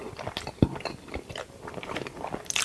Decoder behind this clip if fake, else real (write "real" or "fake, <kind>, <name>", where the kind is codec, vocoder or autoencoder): fake, vocoder, BigVGAN v2